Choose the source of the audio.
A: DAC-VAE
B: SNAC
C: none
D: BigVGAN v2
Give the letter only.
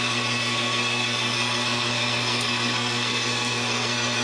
B